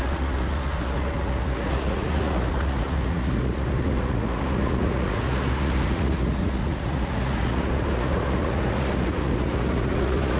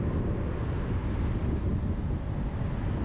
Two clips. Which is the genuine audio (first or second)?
second